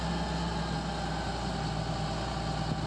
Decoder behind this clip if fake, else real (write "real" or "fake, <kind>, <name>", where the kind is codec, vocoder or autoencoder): real